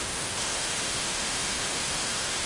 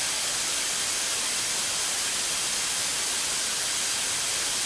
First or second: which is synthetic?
first